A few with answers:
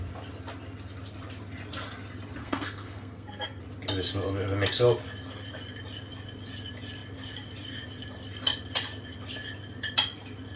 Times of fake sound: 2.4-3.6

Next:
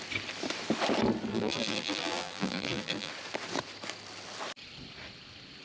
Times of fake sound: 1.3-3.1

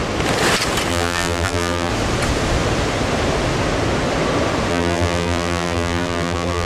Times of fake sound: 0.9-1.9; 4.7-6.7

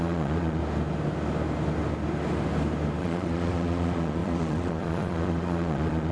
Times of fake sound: 0.0-0.6; 3.0-6.1